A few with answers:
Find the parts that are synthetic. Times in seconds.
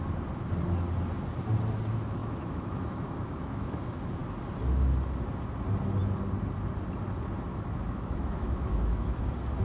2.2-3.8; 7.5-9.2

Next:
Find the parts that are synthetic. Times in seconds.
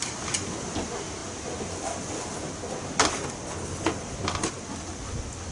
none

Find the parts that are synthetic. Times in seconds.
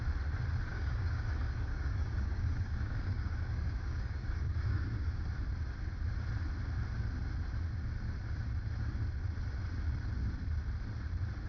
0.7-5.2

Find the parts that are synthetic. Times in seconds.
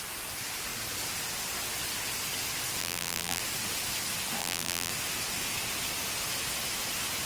2.8-3.4; 4.4-4.9